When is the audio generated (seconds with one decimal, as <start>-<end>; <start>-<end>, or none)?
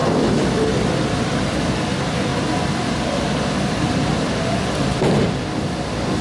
0.0-6.2